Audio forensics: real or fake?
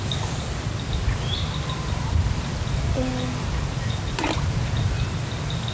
real